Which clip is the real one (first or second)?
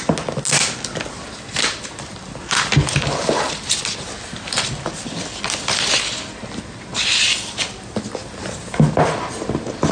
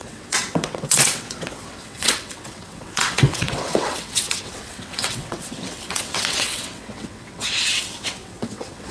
first